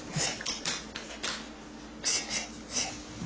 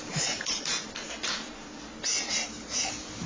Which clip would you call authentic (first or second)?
first